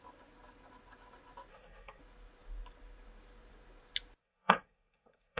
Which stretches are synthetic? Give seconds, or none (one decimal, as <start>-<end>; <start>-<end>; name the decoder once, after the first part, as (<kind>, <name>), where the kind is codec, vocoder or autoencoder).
1.5-2.0 (codec, SNAC); 4.2-5.4